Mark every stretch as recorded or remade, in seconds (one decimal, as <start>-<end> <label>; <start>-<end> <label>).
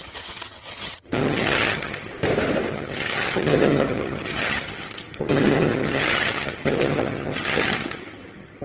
0.0-2.1 remade; 2.1-2.7 recorded; 2.7-8.6 remade